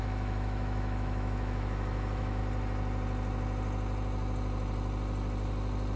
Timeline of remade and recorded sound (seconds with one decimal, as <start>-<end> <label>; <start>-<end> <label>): 0.0-2.4 remade; 2.4-6.0 recorded